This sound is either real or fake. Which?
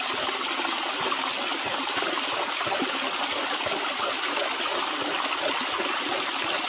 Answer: real